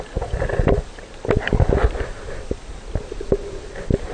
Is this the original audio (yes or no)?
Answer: yes